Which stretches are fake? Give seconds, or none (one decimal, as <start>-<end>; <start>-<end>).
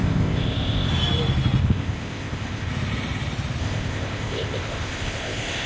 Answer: 0.0-0.9; 1.6-2.7; 3.6-5.7